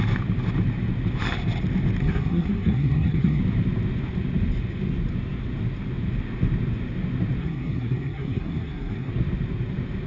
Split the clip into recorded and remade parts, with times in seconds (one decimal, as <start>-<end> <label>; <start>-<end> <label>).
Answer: 0.0-2.0 recorded; 2.0-3.4 remade; 3.4-7.4 recorded; 7.4-9.1 remade; 9.1-10.1 recorded